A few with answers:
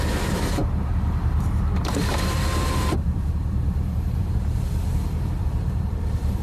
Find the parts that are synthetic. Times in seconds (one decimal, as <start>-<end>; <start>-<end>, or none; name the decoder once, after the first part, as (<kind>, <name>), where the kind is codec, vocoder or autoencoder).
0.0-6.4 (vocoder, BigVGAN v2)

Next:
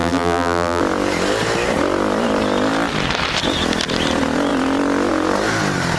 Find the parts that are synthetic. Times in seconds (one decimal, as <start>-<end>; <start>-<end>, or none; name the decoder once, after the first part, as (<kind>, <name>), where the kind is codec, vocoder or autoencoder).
0.0-0.8 (vocoder, BigVGAN v2)

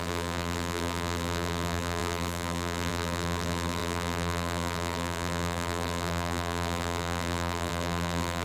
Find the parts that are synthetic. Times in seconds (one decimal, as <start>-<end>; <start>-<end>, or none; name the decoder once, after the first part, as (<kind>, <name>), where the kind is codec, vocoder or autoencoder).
0.0-8.4 (vocoder, BigVGAN v2)